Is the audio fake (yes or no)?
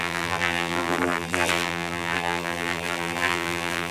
yes